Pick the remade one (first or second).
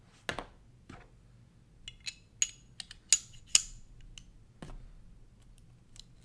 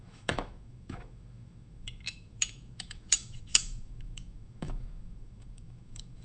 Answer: second